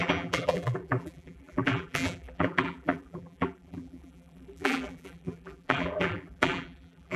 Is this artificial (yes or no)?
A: yes